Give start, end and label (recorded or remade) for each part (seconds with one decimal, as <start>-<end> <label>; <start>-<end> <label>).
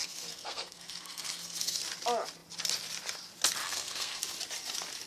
0.0-1.8 remade; 1.8-3.6 recorded; 3.6-4.2 remade; 4.2-5.1 recorded